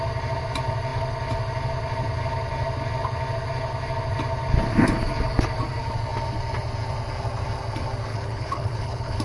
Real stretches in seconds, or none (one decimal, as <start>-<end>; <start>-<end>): 0.0-8.1